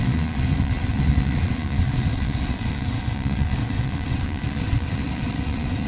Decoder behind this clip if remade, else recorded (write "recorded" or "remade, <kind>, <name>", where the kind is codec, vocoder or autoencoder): remade, vocoder, WaveNeXt